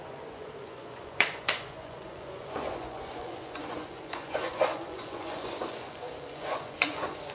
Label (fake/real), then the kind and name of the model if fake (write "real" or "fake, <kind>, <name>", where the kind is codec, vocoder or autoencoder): fake, vocoder, Vocos